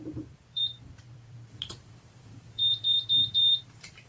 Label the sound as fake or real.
fake